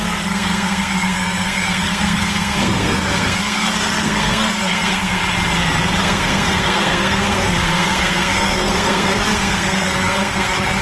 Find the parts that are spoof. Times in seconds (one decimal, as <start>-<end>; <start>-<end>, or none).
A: 0.0-5.2; 6.0-10.8